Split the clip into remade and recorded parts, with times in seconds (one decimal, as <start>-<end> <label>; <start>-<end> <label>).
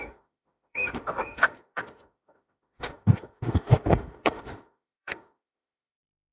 0.0-6.3 remade